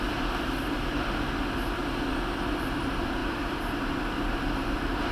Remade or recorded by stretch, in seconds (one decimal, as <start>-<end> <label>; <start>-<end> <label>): 0.0-3.2 recorded; 3.2-3.9 remade; 3.9-5.1 recorded